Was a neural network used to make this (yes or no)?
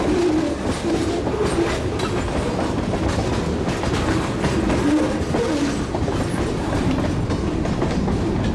no